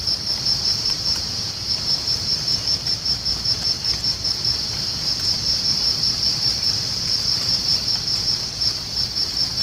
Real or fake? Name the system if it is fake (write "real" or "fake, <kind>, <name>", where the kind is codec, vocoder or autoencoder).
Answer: fake, vocoder, BigVGAN v2